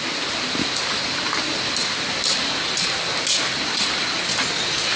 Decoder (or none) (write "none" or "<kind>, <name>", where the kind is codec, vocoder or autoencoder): none